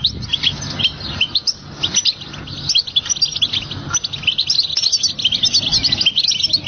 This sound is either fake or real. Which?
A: real